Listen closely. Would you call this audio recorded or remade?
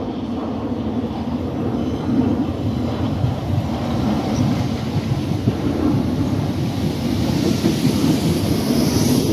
remade